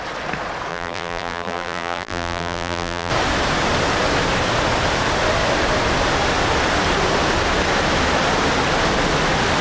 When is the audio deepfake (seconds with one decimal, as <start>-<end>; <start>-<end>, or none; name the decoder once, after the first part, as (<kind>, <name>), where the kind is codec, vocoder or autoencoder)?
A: 0.7-3.1 (vocoder, BigVGAN v2)